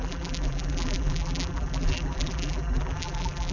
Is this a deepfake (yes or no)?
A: yes